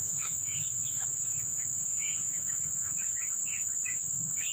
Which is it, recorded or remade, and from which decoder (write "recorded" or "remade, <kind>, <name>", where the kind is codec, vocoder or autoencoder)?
remade, autoencoder, DAC-VAE